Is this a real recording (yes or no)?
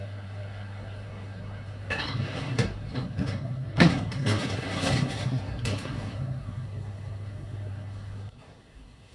no